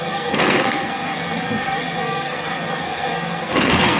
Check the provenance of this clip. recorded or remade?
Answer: remade